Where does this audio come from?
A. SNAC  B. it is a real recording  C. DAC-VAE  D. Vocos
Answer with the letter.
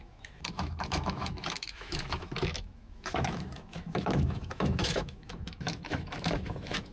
C